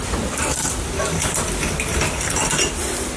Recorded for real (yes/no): yes